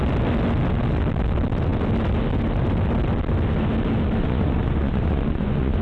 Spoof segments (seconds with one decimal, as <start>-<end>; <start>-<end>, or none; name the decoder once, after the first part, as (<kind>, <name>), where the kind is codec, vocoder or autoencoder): 4.2-5.8 (vocoder, Vocos)